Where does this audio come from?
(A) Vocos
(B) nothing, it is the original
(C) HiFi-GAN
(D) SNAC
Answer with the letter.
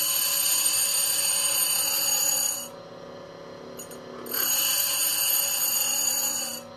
B